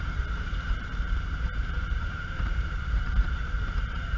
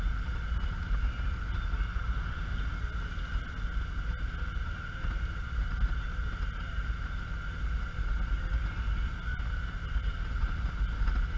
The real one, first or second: second